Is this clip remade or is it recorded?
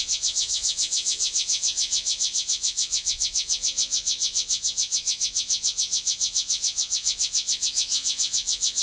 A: remade